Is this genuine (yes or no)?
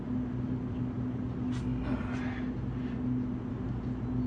yes